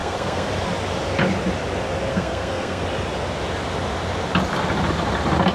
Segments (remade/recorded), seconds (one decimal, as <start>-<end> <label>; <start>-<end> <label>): 0.0-0.5 remade; 0.5-2.1 recorded; 2.1-2.8 remade; 2.8-5.5 recorded